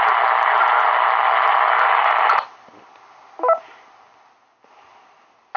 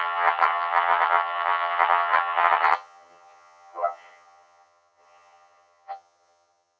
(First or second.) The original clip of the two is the first